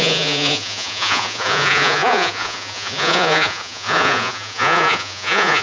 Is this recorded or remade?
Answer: remade